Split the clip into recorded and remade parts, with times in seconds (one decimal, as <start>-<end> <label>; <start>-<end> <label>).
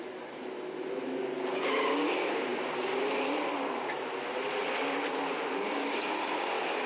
0.0-6.9 recorded